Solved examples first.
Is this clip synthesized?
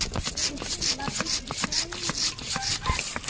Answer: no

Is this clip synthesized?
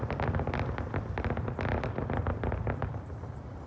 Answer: no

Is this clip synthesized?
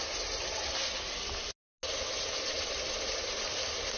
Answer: no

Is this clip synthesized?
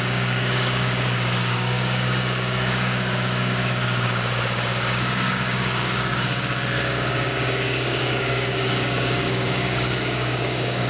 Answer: yes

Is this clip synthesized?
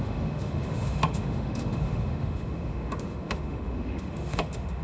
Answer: yes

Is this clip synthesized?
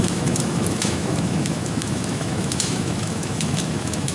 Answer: yes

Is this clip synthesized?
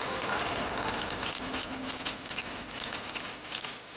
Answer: no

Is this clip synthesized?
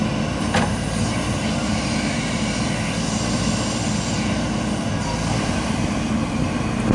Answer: no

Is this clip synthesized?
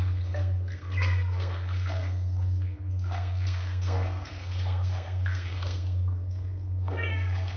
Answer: yes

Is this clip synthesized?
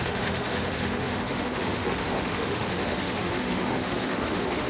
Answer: yes